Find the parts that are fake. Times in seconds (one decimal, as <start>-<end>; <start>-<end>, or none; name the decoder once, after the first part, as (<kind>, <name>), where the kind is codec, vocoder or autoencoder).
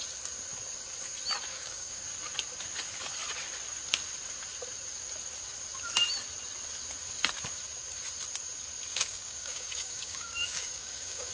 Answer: 1.5-2.0 (codec, DAC); 8.9-11.3